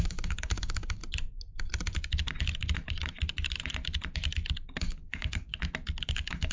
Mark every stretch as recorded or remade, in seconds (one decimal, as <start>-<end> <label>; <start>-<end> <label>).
0.0-1.0 remade; 1.0-4.8 recorded; 4.8-5.5 remade; 5.5-6.1 recorded; 6.1-6.5 remade